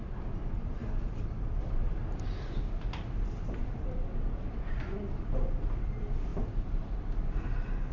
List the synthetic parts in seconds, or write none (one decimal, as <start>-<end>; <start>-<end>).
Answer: 3.6-4.9; 6.3-7.0